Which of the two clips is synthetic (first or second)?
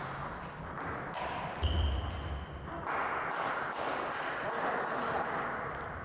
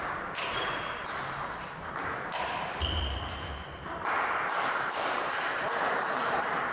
second